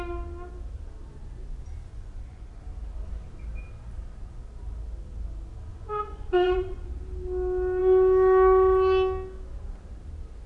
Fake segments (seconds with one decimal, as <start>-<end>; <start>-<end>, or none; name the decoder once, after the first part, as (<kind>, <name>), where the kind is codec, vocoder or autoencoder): 1.9-2.6 (vocoder, Vocos); 5.7-6.9